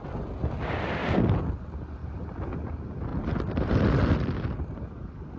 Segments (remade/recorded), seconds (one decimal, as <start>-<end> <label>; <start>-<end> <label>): 0.0-5.4 recorded